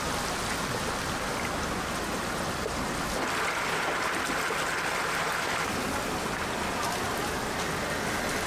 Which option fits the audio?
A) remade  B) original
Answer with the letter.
B